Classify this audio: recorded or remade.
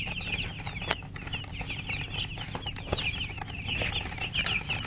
recorded